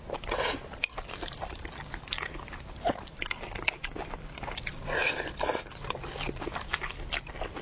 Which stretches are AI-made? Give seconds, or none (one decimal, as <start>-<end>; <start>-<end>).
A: 1.4-2.0